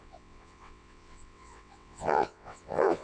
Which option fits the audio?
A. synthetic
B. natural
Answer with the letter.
A